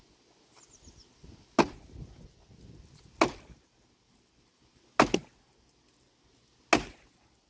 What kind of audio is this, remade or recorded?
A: recorded